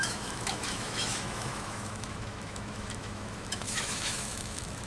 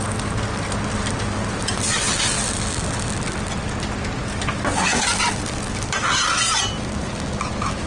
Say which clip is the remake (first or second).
first